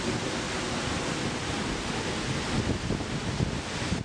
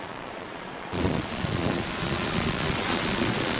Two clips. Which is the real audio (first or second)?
first